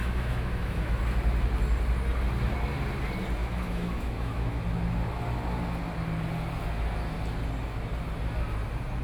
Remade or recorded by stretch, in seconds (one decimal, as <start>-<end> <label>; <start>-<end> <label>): 0.0-1.0 remade; 1.0-3.4 recorded; 3.4-4.6 remade; 4.6-9.0 recorded